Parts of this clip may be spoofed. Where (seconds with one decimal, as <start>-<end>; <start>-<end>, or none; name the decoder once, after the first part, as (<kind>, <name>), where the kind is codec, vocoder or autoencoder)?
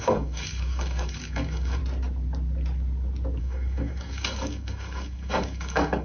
0.0-1.8 (codec, DAC); 3.4-6.0